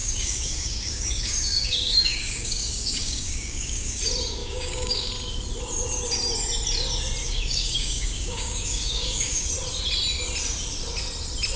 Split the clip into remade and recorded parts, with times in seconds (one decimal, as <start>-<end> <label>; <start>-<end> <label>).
0.0-4.0 remade; 4.0-4.4 recorded; 4.4-5.1 remade; 5.1-7.2 recorded; 7.2-9.5 remade; 9.5-11.6 recorded